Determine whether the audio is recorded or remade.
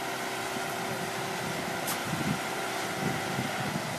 recorded